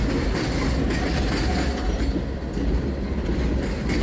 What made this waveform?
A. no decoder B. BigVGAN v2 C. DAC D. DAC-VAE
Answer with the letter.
A